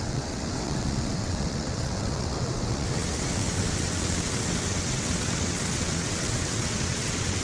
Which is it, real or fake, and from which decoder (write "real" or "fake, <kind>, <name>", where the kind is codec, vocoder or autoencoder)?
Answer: fake, vocoder, WaveNeXt